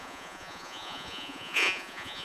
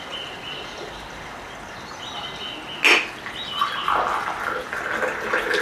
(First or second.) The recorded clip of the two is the second